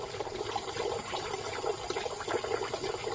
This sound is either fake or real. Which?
real